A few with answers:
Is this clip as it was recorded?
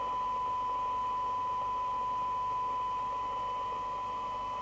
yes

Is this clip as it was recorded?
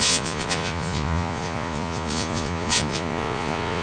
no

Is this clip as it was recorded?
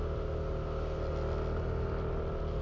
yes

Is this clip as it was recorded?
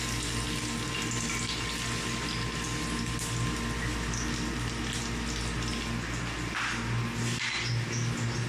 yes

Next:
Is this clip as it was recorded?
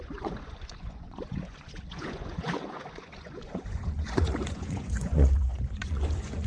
no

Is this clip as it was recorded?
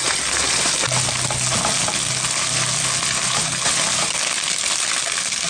yes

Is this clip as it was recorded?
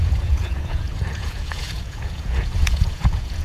no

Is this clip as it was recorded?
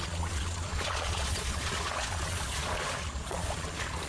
no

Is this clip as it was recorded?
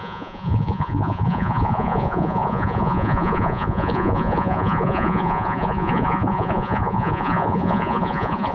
no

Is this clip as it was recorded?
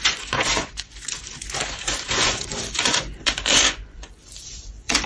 no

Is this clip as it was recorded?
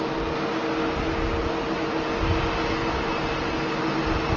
yes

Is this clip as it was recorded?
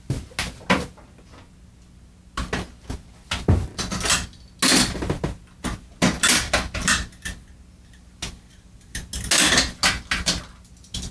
yes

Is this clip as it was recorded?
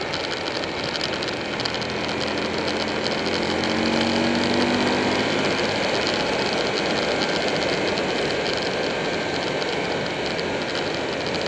yes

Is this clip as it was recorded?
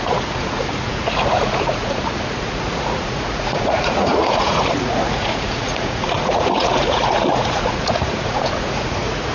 no